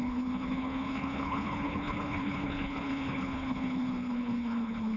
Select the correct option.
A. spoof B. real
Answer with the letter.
A